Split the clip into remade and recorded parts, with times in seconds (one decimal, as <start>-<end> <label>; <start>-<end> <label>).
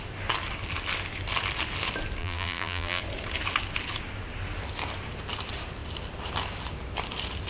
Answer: 0.0-2.2 recorded; 2.2-3.0 remade; 3.0-7.5 recorded